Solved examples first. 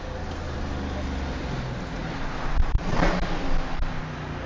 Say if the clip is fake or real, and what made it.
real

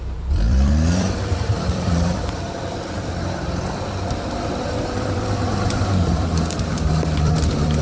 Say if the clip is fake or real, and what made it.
fake, vocoder, BigVGAN v2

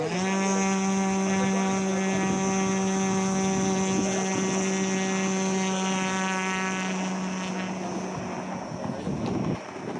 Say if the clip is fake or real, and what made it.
real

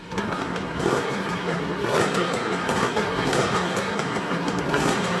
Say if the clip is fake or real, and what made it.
fake, codec, SNAC